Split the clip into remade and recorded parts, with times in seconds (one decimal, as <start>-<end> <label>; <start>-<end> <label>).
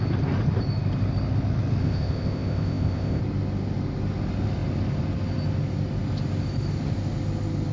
0.0-1.8 recorded; 1.8-3.2 remade; 3.2-7.7 recorded